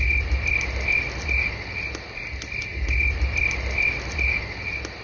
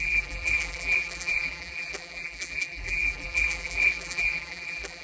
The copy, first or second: second